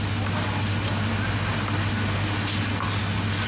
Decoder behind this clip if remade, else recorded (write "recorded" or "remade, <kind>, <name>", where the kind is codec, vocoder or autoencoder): recorded